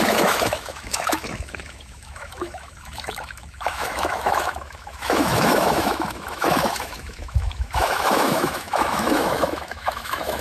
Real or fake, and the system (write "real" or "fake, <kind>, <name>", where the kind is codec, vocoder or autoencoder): fake, autoencoder, DAC-VAE